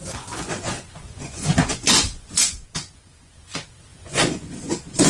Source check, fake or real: fake